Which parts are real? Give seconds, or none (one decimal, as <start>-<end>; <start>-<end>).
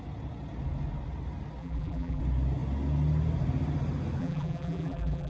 0.0-1.6; 2.2-4.2